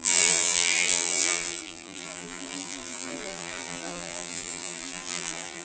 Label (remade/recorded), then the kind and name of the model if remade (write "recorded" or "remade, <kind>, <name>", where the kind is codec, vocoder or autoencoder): remade, vocoder, BigVGAN v2